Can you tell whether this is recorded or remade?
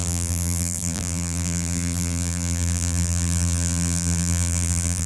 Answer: remade